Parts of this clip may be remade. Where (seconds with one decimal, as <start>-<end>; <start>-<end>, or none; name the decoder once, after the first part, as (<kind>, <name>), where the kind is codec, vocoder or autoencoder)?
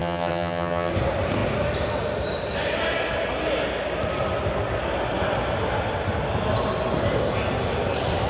0.0-0.9 (vocoder, HiFi-GAN)